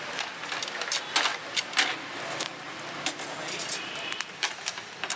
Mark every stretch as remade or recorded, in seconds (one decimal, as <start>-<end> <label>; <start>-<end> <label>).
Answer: 0.0-5.2 recorded